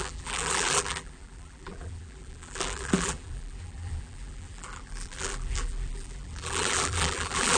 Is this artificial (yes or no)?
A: yes